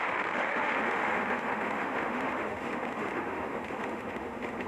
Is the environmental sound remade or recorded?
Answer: remade